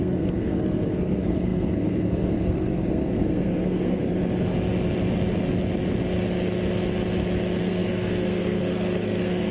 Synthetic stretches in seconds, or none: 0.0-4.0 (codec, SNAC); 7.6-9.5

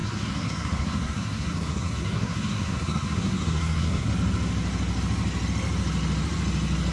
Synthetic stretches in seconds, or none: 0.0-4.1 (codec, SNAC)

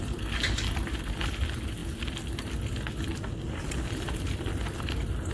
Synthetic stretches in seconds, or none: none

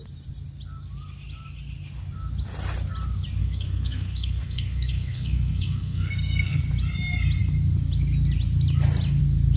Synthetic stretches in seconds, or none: 3.4-6.6 (codec, SNAC)

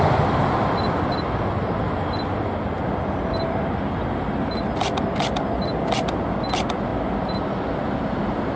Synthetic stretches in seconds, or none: none

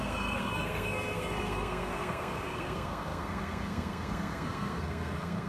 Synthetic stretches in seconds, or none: 0.0-5.5 (codec, SNAC)

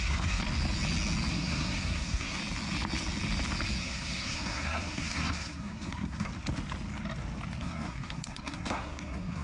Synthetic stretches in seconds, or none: 0.0-0.4 (codec, SNAC); 1.3-2.4; 3.8-6.3; 7.6-9.4

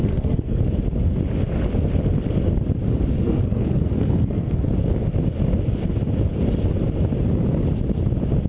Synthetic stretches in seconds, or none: 0.0-0.6 (codec, SNAC); 3.2-4.7